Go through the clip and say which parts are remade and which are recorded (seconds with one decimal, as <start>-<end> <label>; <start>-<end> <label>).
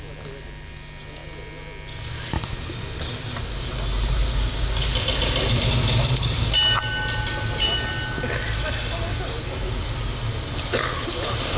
0.0-11.6 recorded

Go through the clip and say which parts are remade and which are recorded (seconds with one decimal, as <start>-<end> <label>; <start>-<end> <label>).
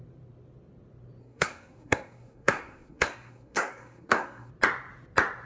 0.0-1.2 recorded; 1.2-4.5 remade; 4.5-5.5 recorded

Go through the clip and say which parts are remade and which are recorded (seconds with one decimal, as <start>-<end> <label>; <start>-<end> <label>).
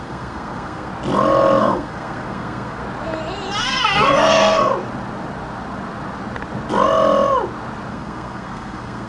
0.0-0.9 remade; 0.9-1.6 recorded; 1.6-2.8 remade; 2.8-3.6 recorded; 3.6-4.7 remade; 4.7-7.9 recorded; 7.9-9.1 remade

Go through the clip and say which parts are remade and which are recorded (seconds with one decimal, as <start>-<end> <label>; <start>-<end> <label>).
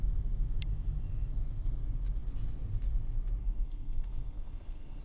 0.0-3.4 recorded; 3.4-5.0 remade